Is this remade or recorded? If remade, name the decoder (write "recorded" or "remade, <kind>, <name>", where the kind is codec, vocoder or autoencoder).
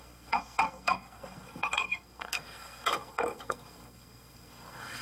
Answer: remade, codec, SNAC